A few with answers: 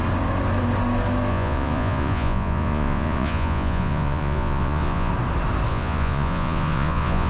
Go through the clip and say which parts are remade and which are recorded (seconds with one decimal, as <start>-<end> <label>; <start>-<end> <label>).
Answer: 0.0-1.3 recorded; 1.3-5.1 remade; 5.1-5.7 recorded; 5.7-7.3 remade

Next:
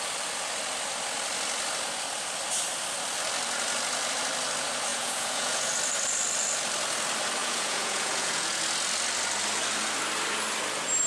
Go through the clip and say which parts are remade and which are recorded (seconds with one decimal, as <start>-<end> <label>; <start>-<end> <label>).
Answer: 0.0-4.9 recorded; 4.9-5.7 remade; 5.7-7.4 recorded; 7.4-8.6 remade; 8.6-11.1 recorded

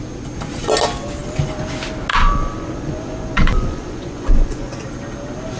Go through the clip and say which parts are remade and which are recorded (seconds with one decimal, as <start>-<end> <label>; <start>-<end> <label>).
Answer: 0.0-2.1 recorded; 2.1-4.8 remade; 4.8-5.6 recorded

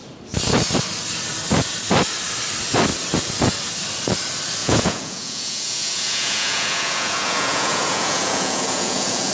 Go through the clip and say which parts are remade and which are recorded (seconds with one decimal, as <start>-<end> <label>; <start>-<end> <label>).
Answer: 0.0-4.6 recorded; 4.6-9.3 remade

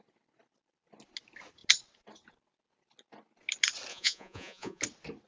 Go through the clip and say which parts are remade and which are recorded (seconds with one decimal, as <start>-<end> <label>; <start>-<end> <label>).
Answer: 0.0-3.9 recorded; 3.9-4.8 remade; 4.8-5.3 recorded